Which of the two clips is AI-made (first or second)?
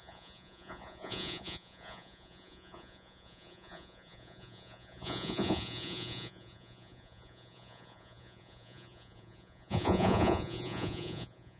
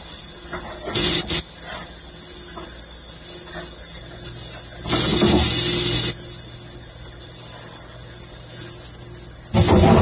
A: first